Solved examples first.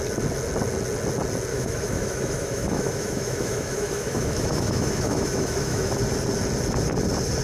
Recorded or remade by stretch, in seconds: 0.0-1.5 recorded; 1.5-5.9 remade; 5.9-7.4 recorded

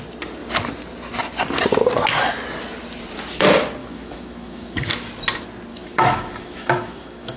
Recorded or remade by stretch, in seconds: 0.0-3.8 recorded; 3.8-4.9 remade; 4.9-5.7 recorded; 5.7-7.4 remade

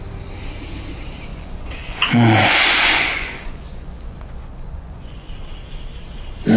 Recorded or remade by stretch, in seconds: 0.0-1.3 recorded; 1.3-5.3 remade; 5.3-6.6 recorded

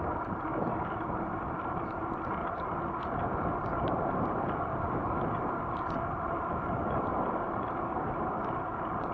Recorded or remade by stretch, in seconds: 0.0-2.7 remade; 2.7-3.5 recorded; 3.5-5.0 remade; 5.0-6.7 recorded; 6.7-9.1 remade

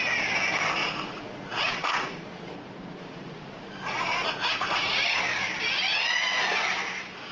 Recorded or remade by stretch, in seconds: 0.0-0.8 recorded; 0.8-5.2 remade; 5.2-7.3 recorded

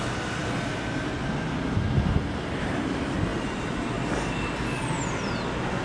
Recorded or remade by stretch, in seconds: 0.0-0.4 recorded; 0.4-1.0 remade; 1.0-2.1 recorded; 2.1-2.9 remade; 2.9-3.3 recorded; 3.3-4.6 remade; 4.6-5.8 recorded

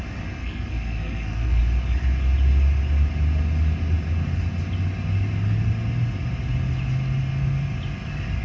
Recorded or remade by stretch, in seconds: 0.0-0.4 recorded; 0.4-1.6 remade; 1.6-8.4 recorded